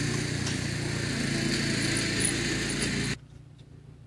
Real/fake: real